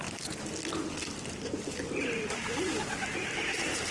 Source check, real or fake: real